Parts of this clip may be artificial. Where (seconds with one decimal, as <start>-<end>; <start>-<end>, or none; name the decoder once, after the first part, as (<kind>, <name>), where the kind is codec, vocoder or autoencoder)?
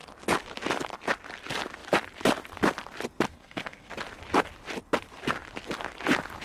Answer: 3.3-3.9 (codec, SNAC)